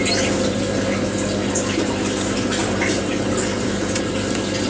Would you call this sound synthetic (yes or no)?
no